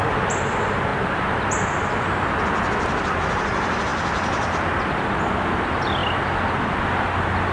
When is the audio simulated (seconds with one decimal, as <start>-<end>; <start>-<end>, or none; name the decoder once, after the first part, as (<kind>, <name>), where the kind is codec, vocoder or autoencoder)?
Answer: none